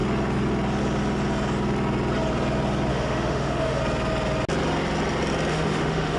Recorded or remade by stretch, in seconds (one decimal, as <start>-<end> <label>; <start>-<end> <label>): 0.0-2.9 recorded; 2.9-3.8 remade; 3.8-5.5 recorded; 5.5-6.2 remade